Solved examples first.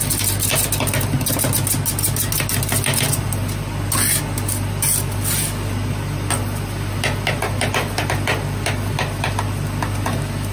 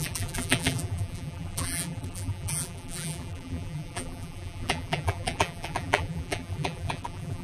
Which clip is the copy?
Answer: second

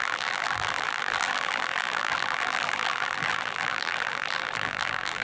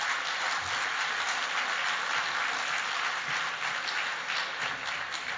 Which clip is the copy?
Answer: first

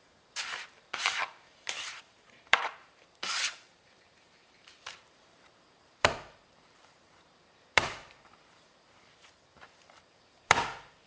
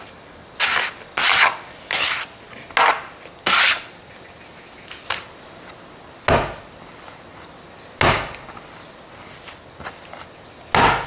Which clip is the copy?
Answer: first